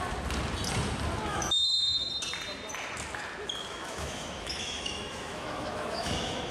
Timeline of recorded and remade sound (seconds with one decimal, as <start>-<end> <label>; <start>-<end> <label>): 0.0-1.3 recorded; 1.3-2.1 remade; 2.1-3.7 recorded; 3.7-6.5 remade